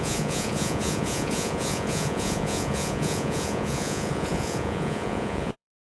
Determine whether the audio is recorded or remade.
remade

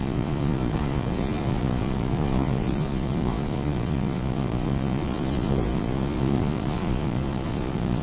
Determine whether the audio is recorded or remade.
remade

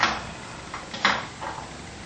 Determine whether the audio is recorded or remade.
recorded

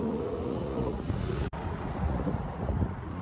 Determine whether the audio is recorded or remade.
remade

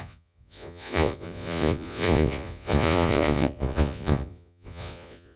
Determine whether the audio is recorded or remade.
remade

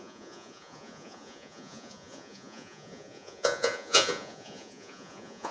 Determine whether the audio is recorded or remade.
remade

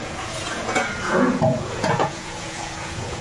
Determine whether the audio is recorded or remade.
remade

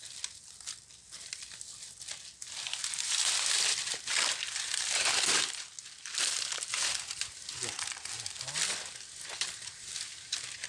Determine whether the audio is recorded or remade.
recorded